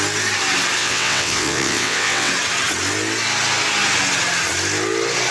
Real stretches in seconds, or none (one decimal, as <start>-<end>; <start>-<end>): 0.0-0.8; 2.3-5.3